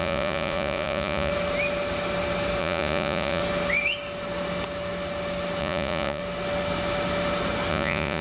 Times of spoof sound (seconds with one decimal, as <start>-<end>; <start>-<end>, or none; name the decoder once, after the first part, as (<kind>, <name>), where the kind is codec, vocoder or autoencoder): 0.0-1.3 (vocoder, Vocos); 2.6-3.4; 5.6-6.2; 7.7-8.2